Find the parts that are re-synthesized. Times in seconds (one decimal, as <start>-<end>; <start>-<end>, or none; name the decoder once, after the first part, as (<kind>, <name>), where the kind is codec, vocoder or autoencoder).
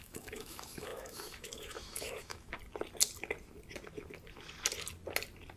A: 0.0-2.5 (autoencoder, DAC-VAE)